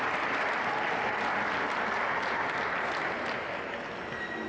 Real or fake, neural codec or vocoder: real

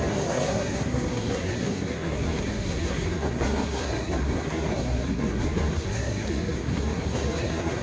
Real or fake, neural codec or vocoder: fake, codec, SNAC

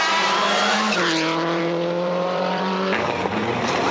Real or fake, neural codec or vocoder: fake, vocoder, BigVGAN v2